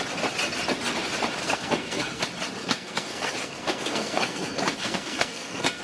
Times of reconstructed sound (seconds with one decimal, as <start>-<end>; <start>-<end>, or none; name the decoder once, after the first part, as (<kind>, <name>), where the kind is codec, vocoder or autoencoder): 1.4-2.2 (codec, SNAC); 2.6-5.8